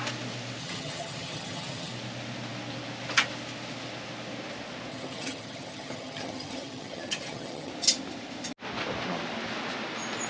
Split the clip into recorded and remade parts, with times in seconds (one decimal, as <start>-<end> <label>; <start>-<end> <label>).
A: 0.0-0.6 recorded; 0.6-1.9 remade; 1.9-4.9 recorded; 4.9-7.7 remade; 7.7-10.3 recorded